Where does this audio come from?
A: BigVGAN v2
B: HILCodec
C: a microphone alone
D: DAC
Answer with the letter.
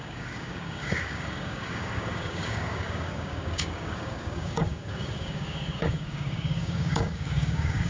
D